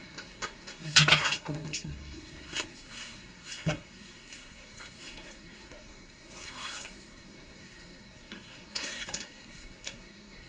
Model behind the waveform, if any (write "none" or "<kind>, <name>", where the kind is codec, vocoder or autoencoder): codec, SNAC